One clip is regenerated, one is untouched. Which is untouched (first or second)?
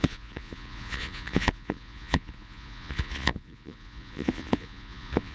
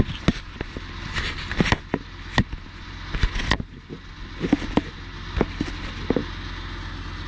second